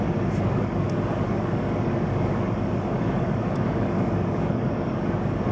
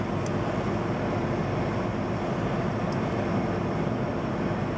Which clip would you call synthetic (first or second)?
first